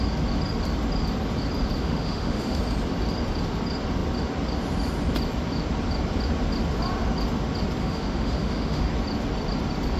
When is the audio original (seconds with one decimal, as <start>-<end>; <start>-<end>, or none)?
0.0-1.8; 2.6-7.8; 8.9-10.0